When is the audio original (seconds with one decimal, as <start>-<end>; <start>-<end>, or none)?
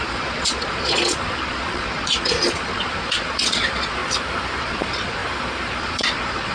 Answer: 4.0-4.6; 5.2-5.8